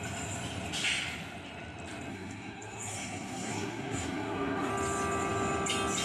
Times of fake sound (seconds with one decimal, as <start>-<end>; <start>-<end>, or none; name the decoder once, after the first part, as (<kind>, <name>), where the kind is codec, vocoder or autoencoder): 2.1-4.7 (codec, SNAC)